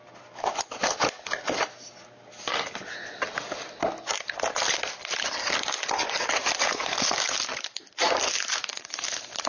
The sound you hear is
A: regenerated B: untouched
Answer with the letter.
B